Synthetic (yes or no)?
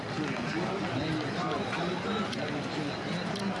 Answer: no